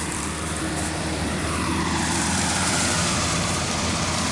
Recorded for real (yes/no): no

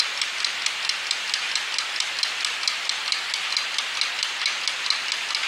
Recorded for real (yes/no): yes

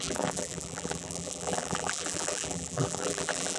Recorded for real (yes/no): no